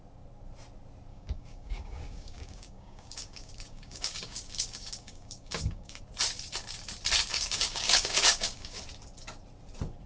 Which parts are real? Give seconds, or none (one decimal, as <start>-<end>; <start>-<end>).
0.0-1.1; 6.0-7.3; 8.8-10.1